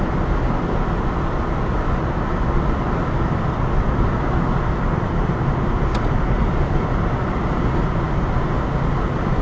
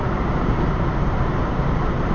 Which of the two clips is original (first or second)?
first